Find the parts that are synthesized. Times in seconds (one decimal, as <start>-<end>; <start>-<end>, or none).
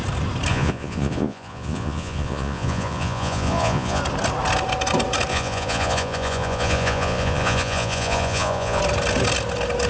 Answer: 0.5-4.0; 5.3-8.8